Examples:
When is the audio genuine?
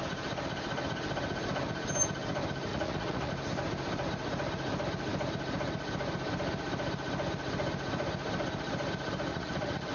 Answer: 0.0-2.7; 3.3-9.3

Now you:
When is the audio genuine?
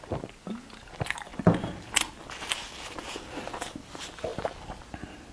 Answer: 0.0-5.3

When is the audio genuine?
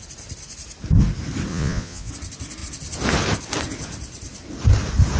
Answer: 0.0-1.5; 2.1-5.2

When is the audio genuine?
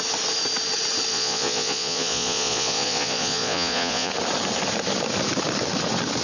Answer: 0.0-1.1; 4.1-6.2